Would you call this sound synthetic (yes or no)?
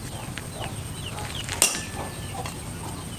no